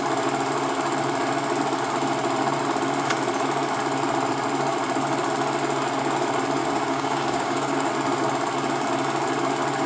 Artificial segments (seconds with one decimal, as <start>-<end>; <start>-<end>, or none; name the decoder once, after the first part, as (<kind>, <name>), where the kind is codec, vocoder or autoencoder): 6.6-7.9 (codec, DAC)